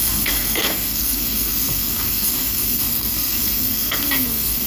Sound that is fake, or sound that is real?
fake